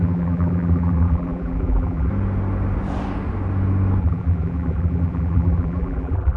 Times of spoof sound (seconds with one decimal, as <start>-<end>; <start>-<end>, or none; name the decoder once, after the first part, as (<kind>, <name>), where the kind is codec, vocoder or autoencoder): 0.0-2.1 (vocoder, BigVGAN v2); 4.0-6.4